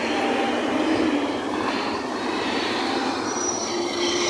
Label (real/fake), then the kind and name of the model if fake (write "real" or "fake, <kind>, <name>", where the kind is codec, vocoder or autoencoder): fake, vocoder, BigVGAN v2